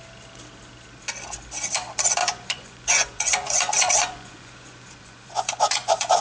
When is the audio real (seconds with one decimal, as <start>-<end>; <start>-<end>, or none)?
0.0-2.2